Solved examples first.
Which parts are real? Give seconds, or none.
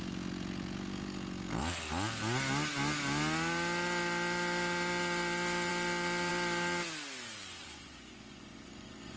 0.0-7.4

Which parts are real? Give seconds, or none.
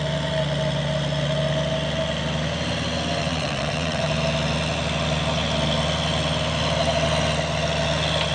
0.0-3.2; 4.1-8.3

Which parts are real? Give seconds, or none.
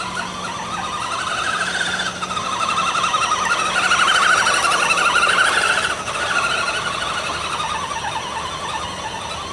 0.0-9.5